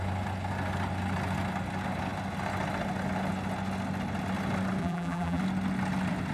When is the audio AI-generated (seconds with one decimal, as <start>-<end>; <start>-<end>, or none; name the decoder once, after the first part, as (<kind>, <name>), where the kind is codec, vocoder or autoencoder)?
4.8-5.4 (vocoder, BigVGAN v2)